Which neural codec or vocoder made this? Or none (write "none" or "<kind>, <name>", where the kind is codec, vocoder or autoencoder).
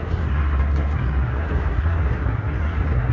codec, SNAC